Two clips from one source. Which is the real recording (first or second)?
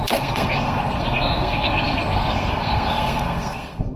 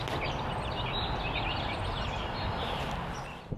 second